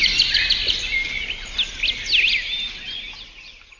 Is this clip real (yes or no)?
yes